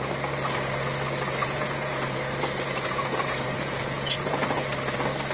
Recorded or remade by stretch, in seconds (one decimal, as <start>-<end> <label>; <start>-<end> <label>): 0.0-1.4 recorded; 1.4-4.6 remade; 4.6-5.3 recorded